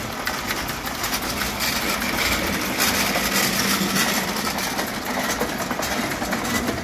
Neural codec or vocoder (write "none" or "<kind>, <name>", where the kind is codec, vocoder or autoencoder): none